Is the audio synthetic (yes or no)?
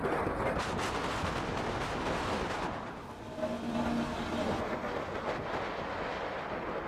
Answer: no